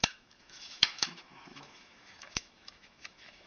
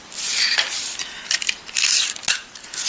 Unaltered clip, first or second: second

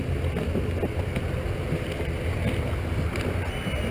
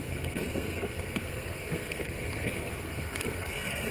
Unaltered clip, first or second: first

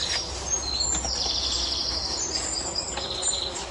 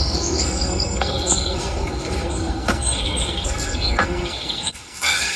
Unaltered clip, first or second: first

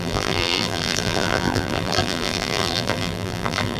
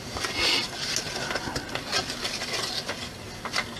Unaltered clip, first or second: second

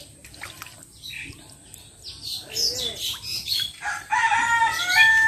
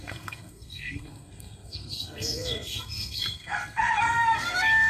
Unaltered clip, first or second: first